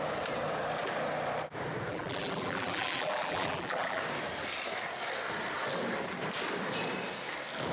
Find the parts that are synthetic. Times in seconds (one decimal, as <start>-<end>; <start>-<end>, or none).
1.9-4.0